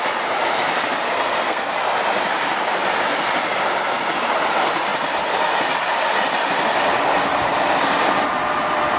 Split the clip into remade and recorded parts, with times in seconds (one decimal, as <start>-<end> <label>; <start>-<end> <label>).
0.0-1.1 recorded; 1.1-1.7 remade; 1.7-9.0 recorded